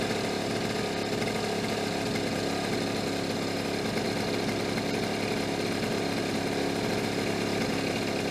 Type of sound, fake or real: real